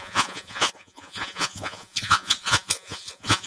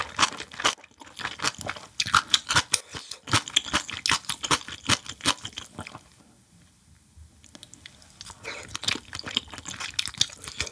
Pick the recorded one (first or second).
second